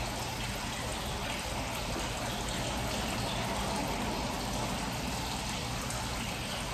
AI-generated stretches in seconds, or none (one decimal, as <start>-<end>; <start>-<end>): none